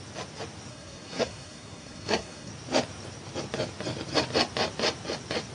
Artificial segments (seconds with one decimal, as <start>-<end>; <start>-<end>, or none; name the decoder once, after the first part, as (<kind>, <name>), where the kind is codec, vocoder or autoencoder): 0.7-2.5 (codec, SNAC)